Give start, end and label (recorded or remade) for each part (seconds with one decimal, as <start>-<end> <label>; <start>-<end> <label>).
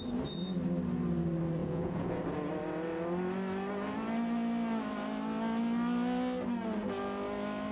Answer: 0.0-1.6 recorded; 1.6-2.2 remade; 2.2-7.7 recorded